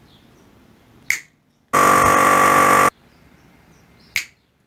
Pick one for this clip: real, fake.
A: real